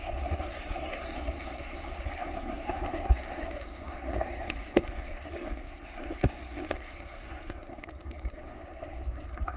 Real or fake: fake